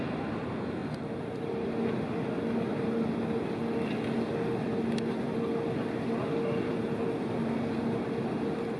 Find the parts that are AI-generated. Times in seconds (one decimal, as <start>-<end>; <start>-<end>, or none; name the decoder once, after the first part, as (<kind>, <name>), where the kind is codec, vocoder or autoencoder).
none